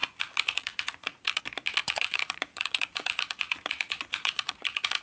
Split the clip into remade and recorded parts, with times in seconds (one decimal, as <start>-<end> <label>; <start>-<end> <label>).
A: 0.0-1.4 remade; 1.4-1.8 recorded; 1.8-5.0 remade